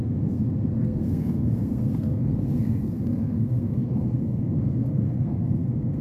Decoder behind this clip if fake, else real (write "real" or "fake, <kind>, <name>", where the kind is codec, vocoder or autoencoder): fake, codec, SNAC